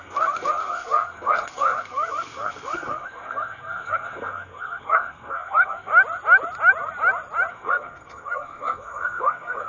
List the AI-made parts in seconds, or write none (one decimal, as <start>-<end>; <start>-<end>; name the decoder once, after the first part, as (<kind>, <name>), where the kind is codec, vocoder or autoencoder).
0.0-5.9 (codec, SNAC); 7.5-9.7